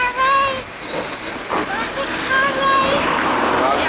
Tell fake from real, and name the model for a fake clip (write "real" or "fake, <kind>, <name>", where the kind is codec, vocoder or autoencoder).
real